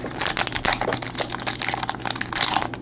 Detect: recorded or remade recorded